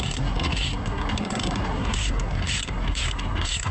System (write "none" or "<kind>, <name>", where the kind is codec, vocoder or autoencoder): codec, SNAC